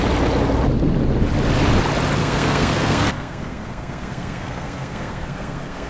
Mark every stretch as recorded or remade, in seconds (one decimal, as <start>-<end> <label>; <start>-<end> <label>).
0.0-2.2 recorded; 2.2-5.9 remade

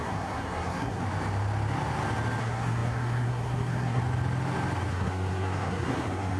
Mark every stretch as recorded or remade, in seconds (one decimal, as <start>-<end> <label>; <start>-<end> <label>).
0.0-1.0 remade; 1.0-2.4 recorded; 2.4-4.0 remade; 4.0-4.9 recorded; 4.9-6.4 remade